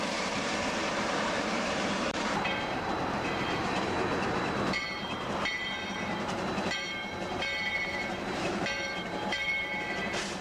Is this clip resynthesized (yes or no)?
yes